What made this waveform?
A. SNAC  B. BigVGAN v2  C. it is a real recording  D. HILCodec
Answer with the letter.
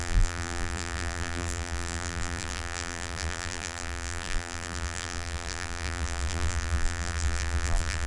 B